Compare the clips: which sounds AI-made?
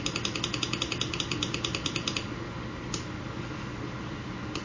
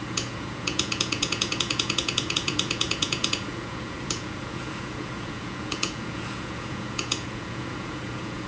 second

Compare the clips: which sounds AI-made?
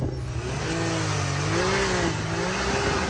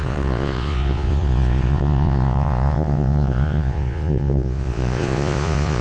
second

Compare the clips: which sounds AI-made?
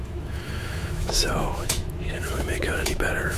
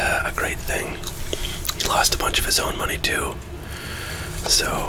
first